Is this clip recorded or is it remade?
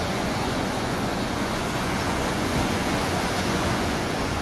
remade